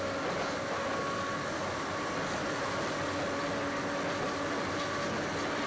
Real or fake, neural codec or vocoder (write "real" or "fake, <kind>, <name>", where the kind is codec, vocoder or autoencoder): real